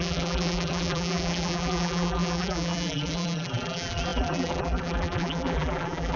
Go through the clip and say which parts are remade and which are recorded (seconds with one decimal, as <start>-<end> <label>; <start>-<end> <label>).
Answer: 0.0-6.2 remade